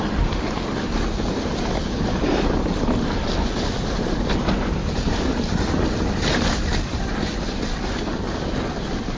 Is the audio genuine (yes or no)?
yes